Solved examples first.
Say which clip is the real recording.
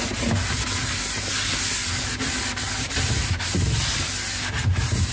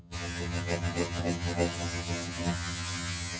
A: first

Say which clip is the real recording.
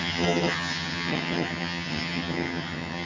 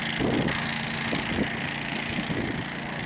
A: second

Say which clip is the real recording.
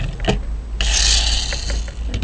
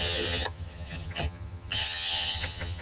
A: first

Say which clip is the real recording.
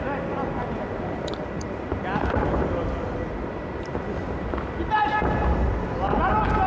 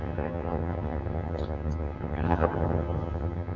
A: first